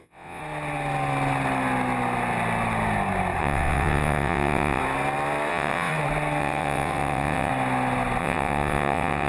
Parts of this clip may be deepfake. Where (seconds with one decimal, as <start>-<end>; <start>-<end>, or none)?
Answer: 0.0-0.4; 3.4-4.8; 5.5-5.9; 6.4-7.5; 8.2-9.3